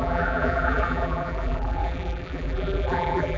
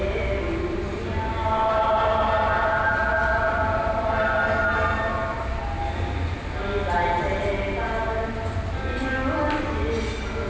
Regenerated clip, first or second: first